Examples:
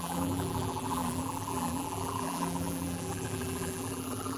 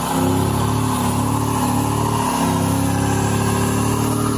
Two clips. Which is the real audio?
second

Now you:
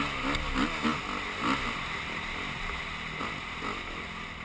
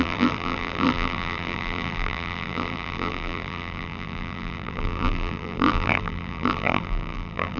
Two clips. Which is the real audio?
first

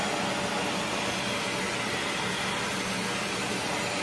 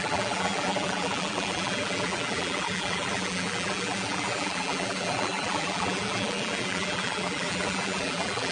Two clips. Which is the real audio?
first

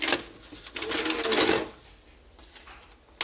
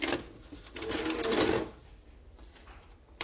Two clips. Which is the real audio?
first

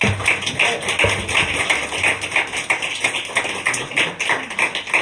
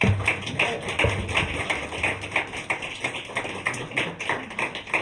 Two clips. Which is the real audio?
first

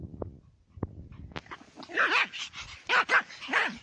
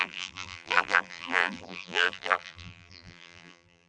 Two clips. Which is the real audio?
first